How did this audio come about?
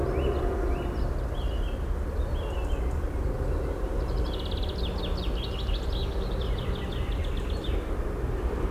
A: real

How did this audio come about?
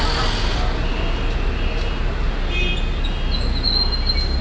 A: real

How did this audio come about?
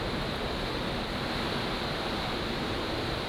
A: real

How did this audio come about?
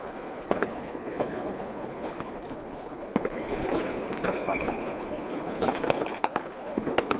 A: fake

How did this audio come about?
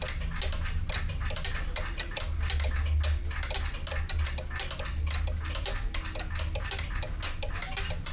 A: real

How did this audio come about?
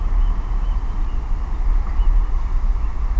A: real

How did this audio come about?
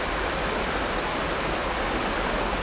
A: fake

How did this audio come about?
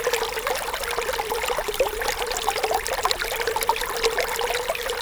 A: real